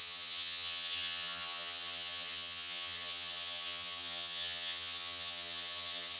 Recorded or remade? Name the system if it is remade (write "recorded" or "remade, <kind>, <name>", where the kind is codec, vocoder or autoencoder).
remade, vocoder, HiFi-GAN